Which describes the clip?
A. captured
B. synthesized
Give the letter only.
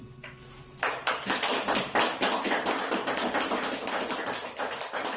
A